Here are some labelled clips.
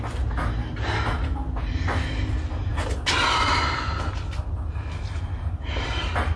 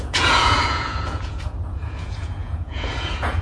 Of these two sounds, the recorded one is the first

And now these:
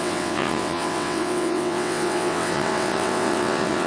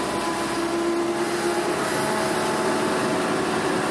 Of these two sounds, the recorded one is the second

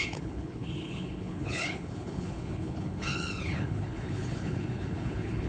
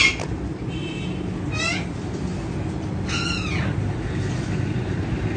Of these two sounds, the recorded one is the second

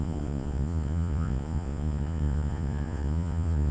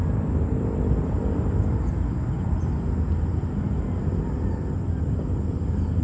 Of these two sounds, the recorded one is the second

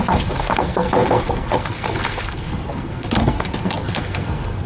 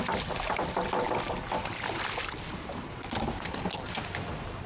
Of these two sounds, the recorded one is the second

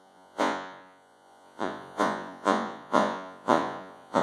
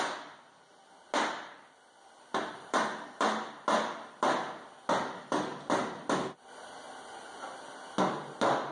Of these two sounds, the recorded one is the second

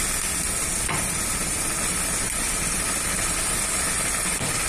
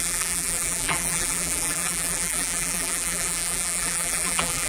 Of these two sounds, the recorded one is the first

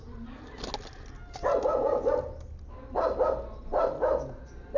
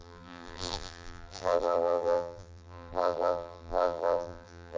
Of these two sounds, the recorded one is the first